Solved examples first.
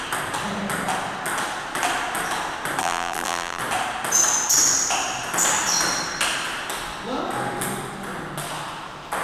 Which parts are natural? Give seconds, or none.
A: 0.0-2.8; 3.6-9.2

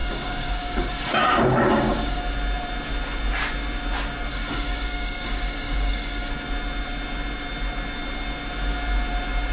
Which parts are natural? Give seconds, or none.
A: 2.2-4.3; 6.3-9.5